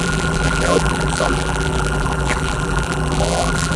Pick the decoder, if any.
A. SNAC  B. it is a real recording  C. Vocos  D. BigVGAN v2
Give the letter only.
D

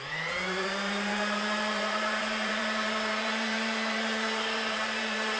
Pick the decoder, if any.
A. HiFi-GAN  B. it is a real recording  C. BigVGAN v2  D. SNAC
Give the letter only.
C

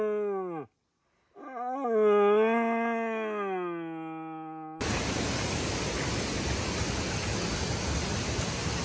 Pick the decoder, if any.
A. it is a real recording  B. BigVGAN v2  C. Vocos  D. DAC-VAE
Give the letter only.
A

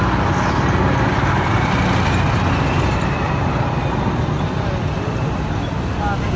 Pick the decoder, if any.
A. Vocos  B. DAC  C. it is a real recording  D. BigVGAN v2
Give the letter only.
C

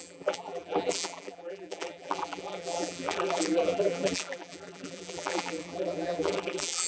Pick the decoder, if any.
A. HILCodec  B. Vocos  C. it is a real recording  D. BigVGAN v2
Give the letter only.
D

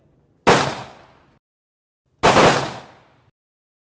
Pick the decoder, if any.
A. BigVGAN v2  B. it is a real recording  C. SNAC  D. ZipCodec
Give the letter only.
B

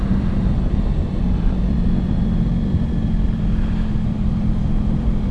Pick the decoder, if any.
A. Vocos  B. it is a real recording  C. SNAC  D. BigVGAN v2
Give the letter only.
D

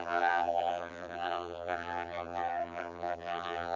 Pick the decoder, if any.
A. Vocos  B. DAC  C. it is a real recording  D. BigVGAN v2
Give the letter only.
D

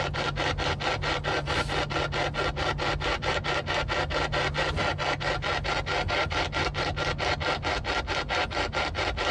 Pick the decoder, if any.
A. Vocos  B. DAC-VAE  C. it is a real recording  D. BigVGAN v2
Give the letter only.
C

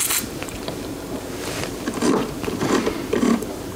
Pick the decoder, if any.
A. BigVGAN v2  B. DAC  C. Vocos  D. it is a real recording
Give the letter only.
A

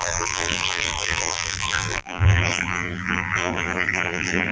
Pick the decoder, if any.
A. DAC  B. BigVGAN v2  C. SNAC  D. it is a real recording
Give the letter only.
B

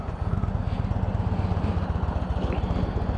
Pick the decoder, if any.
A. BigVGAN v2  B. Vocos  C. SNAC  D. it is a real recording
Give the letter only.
D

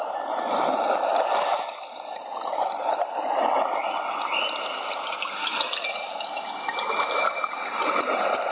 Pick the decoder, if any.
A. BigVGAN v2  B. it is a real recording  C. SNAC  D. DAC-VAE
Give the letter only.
A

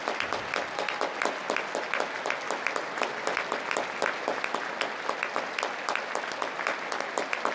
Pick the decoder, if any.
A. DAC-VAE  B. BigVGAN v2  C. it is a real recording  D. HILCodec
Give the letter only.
C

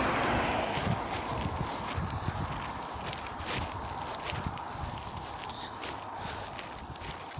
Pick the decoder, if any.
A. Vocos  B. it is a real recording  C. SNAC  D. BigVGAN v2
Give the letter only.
B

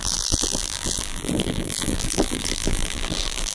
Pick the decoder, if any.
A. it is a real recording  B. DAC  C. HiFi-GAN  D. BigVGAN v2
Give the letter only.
D